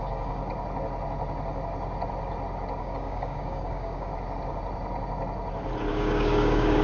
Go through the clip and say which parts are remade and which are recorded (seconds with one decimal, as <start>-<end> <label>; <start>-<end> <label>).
0.0-0.4 remade; 0.4-2.8 recorded; 2.8-4.1 remade; 4.1-5.9 recorded; 5.9-6.8 remade